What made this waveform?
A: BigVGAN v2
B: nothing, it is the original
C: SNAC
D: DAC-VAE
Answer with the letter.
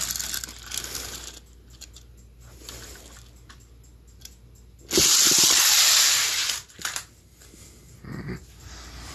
B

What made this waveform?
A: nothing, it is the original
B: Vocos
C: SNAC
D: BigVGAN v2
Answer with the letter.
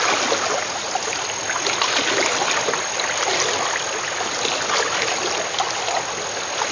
A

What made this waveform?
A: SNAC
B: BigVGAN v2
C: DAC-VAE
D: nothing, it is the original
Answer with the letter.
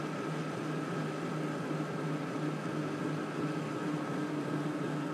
D